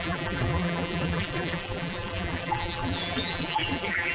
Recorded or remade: remade